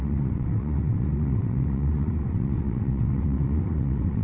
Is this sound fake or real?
fake